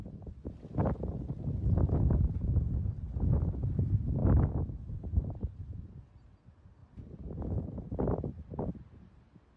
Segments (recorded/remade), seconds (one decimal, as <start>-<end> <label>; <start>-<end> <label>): 0.0-6.8 recorded; 6.8-7.3 remade; 7.3-9.6 recorded